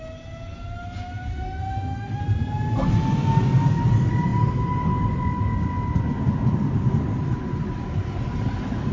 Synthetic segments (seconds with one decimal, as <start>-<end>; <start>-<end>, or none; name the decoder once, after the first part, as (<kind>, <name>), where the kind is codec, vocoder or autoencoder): 1.3-2.2 (autoencoder, DAC-VAE)

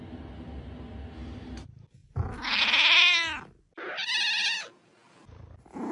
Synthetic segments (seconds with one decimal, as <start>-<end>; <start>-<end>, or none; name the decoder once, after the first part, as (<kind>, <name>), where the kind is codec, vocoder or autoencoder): none

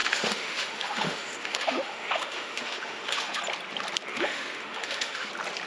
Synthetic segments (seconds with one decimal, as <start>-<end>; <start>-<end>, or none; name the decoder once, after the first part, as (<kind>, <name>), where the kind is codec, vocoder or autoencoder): 0.0-3.4 (autoencoder, DAC-VAE); 4.1-5.3

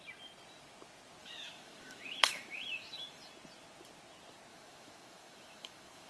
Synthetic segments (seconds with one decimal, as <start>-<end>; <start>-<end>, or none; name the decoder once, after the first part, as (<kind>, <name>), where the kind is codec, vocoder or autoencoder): 1.2-3.3 (autoencoder, DAC-VAE); 4.5-6.1

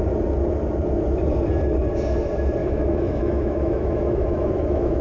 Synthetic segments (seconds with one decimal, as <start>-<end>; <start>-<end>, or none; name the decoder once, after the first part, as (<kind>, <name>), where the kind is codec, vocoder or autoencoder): 2.6-5.0 (autoencoder, DAC-VAE)

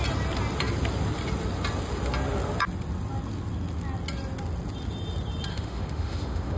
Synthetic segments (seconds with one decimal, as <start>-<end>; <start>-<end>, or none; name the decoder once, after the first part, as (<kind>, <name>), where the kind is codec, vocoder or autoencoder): 5.5-6.6 (autoencoder, DAC-VAE)

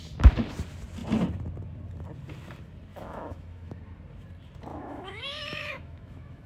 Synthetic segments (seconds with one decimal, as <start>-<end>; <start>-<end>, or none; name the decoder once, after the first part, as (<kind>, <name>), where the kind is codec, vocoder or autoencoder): 2.9-3.8 (autoencoder, DAC-VAE); 4.7-6.5